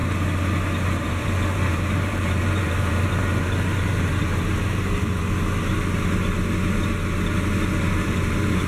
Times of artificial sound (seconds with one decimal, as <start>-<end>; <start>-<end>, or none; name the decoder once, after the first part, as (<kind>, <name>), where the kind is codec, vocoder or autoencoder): 0.8-5.2 (vocoder, BigVGAN v2); 7.9-8.7